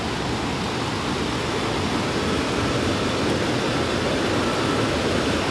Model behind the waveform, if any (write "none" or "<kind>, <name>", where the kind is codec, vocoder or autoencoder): none